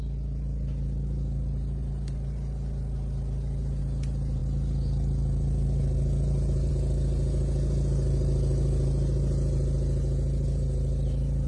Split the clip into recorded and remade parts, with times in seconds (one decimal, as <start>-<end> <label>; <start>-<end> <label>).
0.0-11.5 recorded